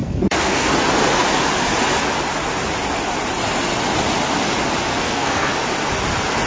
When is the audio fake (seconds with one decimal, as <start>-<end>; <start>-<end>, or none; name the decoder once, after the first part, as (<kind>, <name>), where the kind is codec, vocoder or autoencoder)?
0.0-0.7 (codec, SNAC); 4.9-5.5